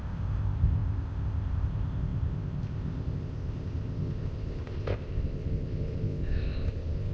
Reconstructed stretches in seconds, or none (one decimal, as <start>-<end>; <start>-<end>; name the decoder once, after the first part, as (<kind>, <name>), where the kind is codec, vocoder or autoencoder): 0.0-7.1 (codec, ZipCodec)